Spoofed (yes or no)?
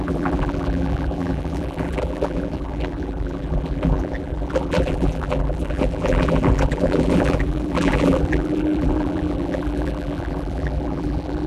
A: yes